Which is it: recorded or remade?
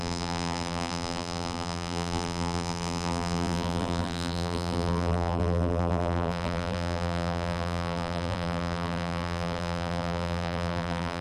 remade